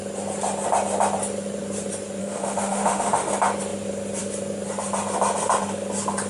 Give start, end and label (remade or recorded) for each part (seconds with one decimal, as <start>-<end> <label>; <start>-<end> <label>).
0.0-2.2 recorded; 2.2-3.3 remade; 3.3-6.3 recorded